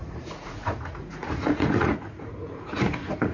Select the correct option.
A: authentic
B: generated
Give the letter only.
B